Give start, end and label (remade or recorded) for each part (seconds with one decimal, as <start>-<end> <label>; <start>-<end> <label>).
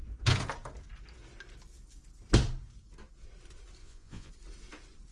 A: 0.0-3.8 recorded; 3.8-4.3 remade; 4.3-5.1 recorded